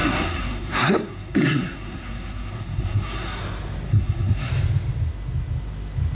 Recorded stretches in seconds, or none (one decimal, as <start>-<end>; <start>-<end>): 3.4-3.9; 4.5-6.1